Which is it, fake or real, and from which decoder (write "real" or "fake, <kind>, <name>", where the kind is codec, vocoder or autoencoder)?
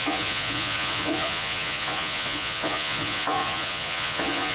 fake, vocoder, Vocos